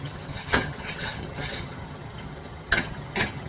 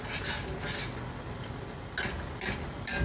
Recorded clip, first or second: second